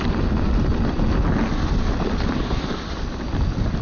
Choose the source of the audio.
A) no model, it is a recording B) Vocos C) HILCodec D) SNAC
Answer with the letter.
A